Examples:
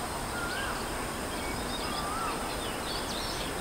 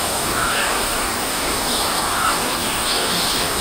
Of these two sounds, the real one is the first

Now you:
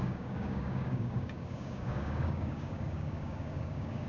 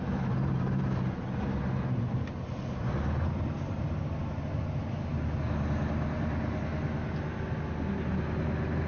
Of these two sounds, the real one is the second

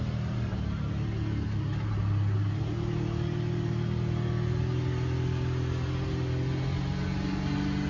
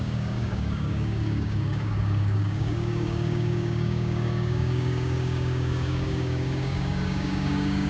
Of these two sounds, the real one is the first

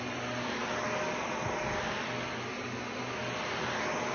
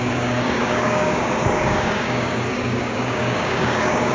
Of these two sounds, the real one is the first